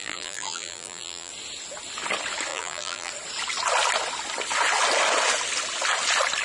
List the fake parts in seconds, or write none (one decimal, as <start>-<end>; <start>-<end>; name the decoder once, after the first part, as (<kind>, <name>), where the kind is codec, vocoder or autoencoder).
0.0-1.3 (vocoder, BigVGAN v2); 2.5-3.1